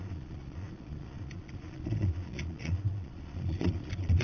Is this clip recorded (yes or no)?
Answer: no